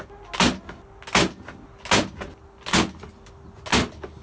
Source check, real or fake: real